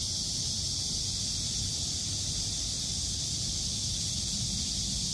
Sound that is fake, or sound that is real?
real